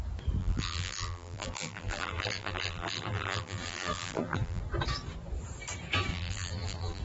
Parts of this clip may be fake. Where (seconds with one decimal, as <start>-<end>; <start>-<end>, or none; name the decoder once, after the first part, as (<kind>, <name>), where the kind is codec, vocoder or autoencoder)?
0.4-4.6 (vocoder, BigVGAN v2); 6.1-7.0